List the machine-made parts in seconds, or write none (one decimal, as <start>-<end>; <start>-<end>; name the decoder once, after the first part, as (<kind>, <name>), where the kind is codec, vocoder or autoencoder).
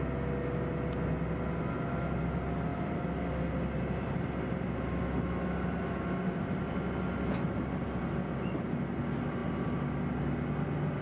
none